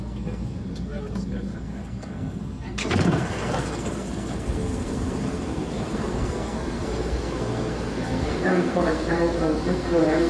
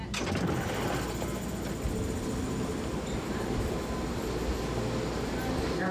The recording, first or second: second